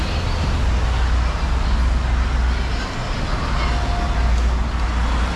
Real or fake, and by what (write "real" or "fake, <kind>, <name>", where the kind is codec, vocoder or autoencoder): real